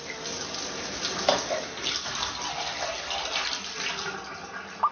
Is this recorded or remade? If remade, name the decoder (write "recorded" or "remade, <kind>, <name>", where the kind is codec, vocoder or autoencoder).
recorded